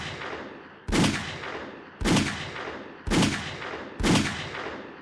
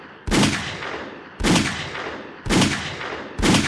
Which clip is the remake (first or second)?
second